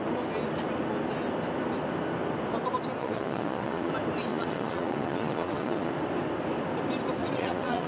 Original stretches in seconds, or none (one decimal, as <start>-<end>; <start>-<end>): 0.0-3.0; 3.9-4.3; 5.9-7.2